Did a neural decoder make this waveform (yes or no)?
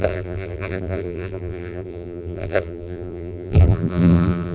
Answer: yes